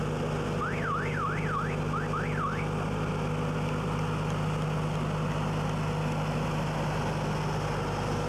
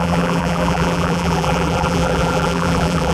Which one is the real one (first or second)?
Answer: first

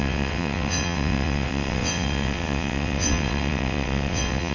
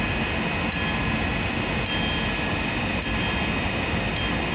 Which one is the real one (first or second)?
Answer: second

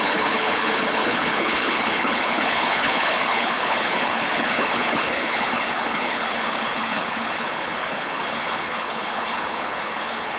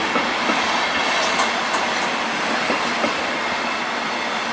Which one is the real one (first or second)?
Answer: second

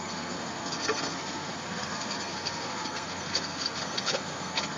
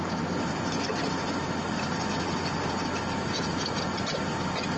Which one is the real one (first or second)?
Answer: second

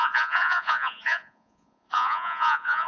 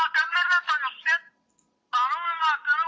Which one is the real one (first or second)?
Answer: second